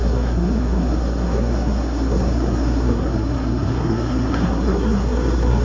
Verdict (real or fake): fake